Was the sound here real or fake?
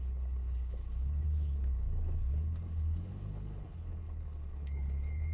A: fake